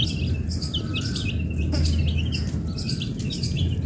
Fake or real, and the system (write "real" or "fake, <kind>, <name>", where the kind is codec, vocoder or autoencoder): real